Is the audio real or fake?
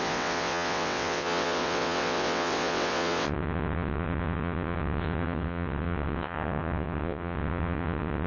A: fake